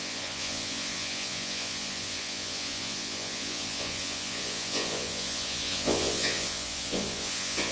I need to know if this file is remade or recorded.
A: remade